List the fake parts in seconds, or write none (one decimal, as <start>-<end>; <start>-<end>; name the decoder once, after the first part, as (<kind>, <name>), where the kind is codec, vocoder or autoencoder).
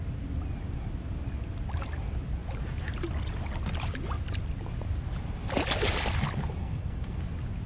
6.6-7.2 (codec, SNAC)